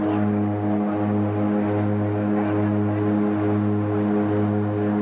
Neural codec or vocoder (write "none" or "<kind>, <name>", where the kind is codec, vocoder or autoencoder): none